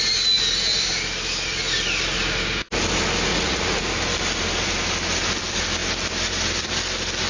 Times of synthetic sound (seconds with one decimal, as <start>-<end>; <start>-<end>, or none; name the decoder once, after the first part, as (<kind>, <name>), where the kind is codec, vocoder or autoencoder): 3.3-3.8 (vocoder, Vocos)